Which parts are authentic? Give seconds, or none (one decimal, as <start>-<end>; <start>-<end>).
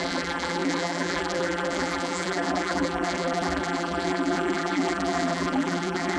none